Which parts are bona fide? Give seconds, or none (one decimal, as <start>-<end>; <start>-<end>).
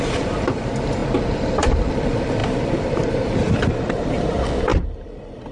0.0-4.7